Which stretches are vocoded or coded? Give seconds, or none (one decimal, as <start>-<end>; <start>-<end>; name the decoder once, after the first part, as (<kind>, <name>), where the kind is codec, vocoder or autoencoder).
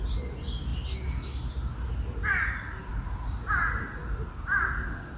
none